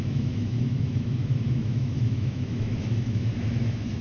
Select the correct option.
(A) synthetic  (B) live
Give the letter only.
A